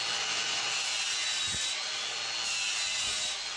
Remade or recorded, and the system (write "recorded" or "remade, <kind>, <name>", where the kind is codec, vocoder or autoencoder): recorded